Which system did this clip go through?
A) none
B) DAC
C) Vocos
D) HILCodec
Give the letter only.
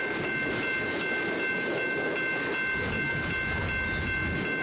A